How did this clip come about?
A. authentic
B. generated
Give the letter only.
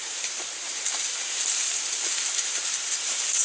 B